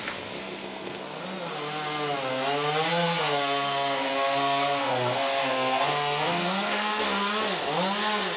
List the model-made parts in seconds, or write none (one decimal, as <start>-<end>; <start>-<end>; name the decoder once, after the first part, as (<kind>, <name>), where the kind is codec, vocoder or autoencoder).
0.4-1.0 (codec, SNAC); 2.9-7.0